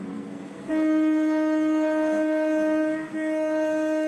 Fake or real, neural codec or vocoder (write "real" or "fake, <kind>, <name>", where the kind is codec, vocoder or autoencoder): fake, codec, SNAC